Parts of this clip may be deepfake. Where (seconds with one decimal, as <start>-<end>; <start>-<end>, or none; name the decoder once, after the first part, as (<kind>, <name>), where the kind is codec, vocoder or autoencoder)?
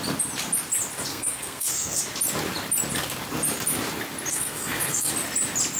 1.1-2.0 (codec, SNAC); 4.3-5.1